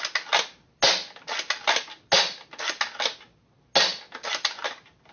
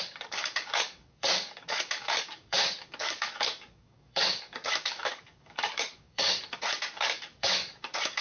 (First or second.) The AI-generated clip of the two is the second